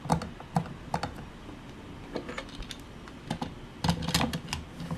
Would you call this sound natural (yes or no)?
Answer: yes